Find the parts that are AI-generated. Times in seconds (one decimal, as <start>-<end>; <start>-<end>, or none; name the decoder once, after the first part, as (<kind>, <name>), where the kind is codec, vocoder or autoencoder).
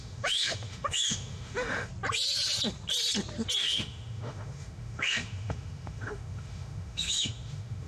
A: 0.0-1.9 (autoencoder, DAC-VAE); 3.6-7.9